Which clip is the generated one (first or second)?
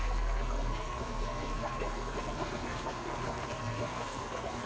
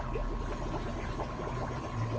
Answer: first